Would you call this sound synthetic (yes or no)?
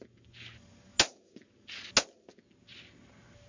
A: no